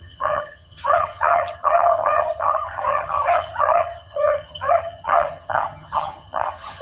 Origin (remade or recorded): remade